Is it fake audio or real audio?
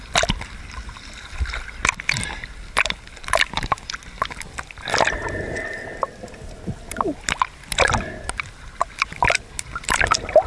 real